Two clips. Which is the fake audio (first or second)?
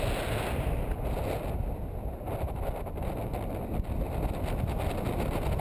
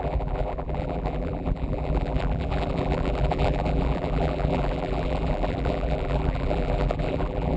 second